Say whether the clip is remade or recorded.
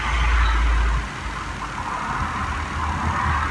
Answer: recorded